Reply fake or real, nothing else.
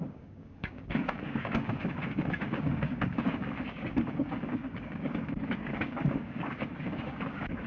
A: fake